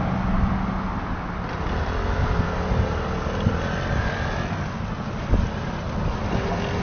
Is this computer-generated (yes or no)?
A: no